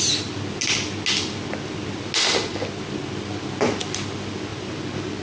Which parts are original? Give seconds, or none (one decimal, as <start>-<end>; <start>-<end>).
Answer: 0.0-5.2